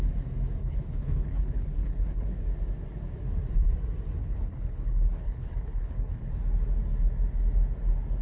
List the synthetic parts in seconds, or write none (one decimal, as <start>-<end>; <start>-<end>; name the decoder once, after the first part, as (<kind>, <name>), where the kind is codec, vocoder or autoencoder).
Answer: 0.6-2.4 (codec, HILCodec); 4.2-6.2